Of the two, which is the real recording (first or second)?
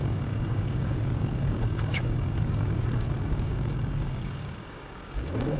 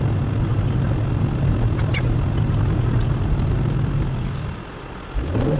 second